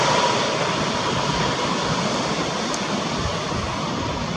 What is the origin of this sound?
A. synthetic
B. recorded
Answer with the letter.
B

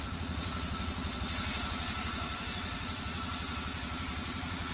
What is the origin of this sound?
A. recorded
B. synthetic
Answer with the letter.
B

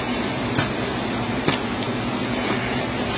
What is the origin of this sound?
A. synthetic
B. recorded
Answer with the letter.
B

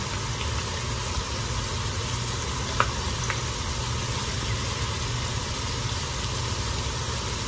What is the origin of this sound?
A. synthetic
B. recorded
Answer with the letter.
B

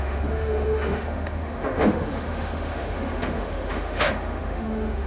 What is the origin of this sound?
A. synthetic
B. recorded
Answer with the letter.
A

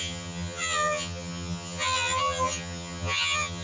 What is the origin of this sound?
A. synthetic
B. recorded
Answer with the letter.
A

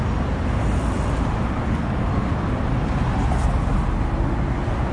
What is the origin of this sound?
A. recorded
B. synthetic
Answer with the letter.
A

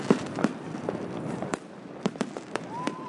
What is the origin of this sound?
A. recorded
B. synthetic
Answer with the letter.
B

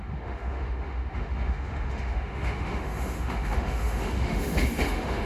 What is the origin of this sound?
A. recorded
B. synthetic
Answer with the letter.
B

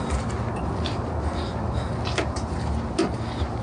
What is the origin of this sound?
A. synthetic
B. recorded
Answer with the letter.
B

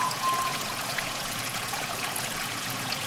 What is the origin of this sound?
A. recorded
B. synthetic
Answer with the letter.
B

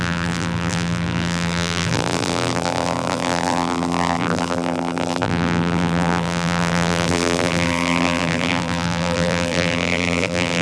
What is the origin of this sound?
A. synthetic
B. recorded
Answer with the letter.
A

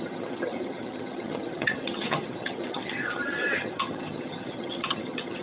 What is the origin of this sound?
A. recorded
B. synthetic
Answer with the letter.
B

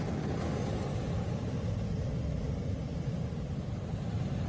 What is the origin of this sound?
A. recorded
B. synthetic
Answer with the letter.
A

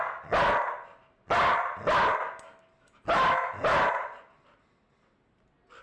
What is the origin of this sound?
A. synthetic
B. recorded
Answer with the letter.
B